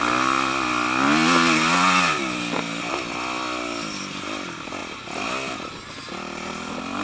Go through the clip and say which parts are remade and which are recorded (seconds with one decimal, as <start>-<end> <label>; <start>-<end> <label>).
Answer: 0.0-7.0 recorded